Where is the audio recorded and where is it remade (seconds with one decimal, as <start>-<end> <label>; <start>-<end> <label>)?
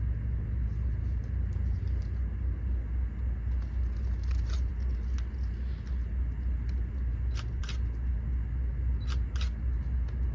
0.0-10.3 recorded